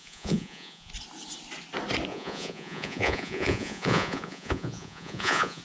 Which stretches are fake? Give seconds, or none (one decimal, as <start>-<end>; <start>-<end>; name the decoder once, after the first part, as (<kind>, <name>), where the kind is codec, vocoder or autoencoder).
0.0-0.9 (vocoder, Vocos); 2.1-5.6